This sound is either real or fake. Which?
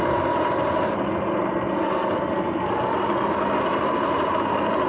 real